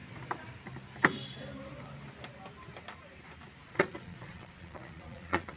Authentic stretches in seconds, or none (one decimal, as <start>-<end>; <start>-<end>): 0.0-3.6